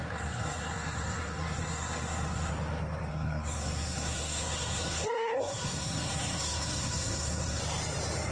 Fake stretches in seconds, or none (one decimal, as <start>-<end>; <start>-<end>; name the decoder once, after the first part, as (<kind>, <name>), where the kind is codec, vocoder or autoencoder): 0.0-2.5 (codec, SNAC); 3.1-7.6